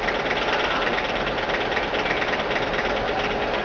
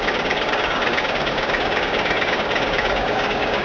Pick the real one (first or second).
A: first